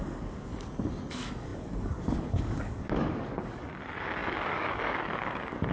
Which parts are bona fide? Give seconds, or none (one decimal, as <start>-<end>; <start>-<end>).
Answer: 0.5-1.1